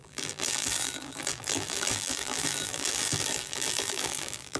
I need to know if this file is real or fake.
fake